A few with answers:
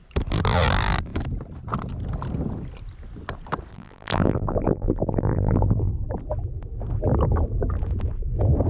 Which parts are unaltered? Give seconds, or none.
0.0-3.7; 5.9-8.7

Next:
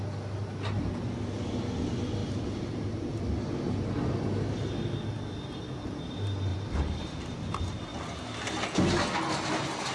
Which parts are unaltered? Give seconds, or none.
0.0-2.2; 3.2-6.5; 7.5-9.9

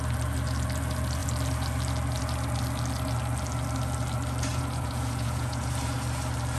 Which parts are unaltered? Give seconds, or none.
0.0-4.5; 5.7-6.6

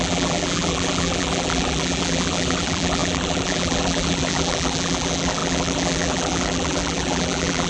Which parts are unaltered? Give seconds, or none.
none

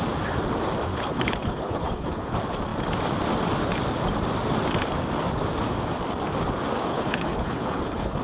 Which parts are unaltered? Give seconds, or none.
0.0-0.9; 2.3-6.9

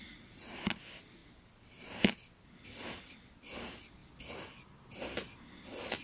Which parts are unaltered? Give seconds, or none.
0.0-6.0

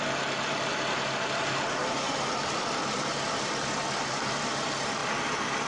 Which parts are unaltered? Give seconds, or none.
0.0-2.8; 4.5-5.0

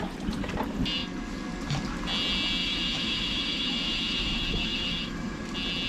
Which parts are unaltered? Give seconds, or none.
0.0-2.6; 5.4-5.9